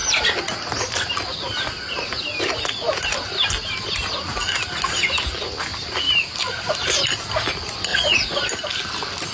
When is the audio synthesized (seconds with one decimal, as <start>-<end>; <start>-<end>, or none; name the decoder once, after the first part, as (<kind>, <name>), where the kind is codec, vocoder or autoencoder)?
7.9-8.5 (vocoder, Vocos)